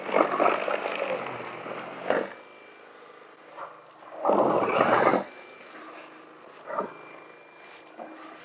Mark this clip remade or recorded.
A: recorded